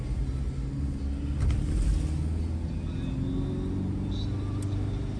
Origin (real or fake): real